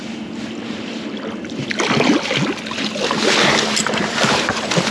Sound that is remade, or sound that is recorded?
recorded